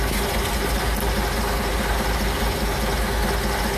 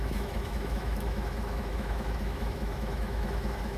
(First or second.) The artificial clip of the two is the second